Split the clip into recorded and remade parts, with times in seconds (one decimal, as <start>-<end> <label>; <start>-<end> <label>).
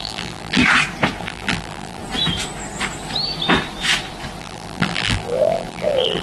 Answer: 0.0-0.6 remade; 0.6-1.2 recorded; 1.2-2.0 remade; 2.0-4.4 recorded; 4.4-6.2 remade